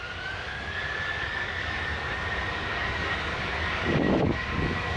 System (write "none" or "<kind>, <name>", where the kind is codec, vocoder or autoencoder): codec, DAC